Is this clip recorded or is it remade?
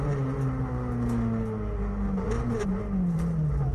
recorded